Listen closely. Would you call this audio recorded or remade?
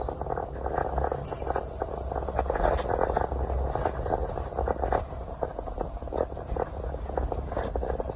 recorded